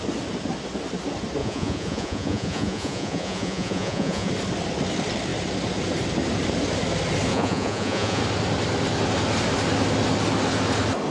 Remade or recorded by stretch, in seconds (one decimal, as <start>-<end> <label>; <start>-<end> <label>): 0.0-1.4 recorded; 1.4-4.3 remade; 4.3-7.3 recorded; 7.3-8.2 remade; 8.2-11.1 recorded